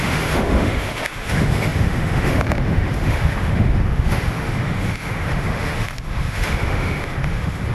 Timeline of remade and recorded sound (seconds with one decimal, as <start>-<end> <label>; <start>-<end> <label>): 0.0-7.7 remade